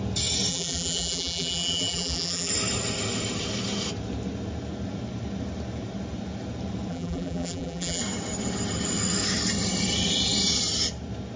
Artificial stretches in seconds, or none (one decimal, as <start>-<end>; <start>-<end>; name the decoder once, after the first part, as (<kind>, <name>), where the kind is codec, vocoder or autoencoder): 0.5-2.5 (vocoder, BigVGAN v2); 6.9-8.0